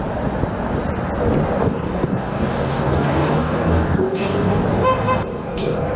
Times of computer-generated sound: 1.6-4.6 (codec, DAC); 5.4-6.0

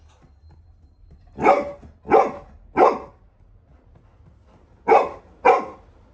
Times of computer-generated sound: none

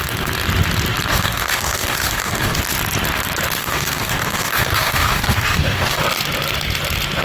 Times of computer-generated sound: 1.1-2.6 (codec, DAC); 3.6-6.0

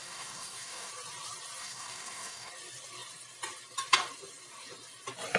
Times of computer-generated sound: 0.0-0.9 (codec, DAC); 1.6-2.5